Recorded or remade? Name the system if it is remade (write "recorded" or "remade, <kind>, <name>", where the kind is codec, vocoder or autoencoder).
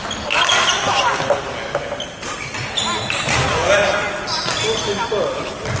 recorded